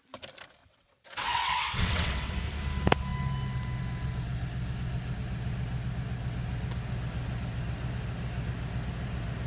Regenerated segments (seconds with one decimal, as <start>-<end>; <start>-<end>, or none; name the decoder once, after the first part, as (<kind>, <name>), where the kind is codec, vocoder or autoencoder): 0.6-2.3 (vocoder, WaveNeXt)